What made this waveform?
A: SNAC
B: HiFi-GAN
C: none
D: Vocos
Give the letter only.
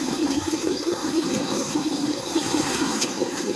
A